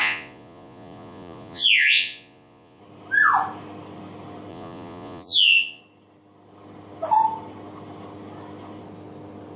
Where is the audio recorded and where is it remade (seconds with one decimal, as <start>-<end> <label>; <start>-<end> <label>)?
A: 0.0-2.8 remade; 2.8-4.5 recorded; 4.5-5.8 remade; 5.8-9.6 recorded